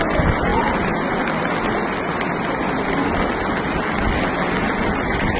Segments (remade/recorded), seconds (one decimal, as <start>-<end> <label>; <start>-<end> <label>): 0.0-5.4 recorded